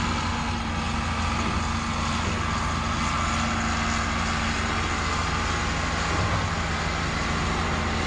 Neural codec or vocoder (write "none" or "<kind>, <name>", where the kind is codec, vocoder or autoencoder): none